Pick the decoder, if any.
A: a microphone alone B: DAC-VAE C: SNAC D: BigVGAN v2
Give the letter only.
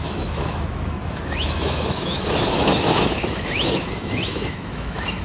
B